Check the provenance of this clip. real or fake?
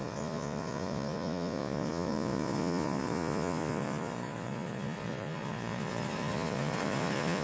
fake